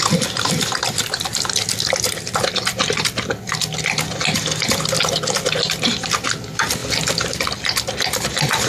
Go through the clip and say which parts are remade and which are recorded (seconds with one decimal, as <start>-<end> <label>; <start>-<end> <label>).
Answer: 0.0-8.7 recorded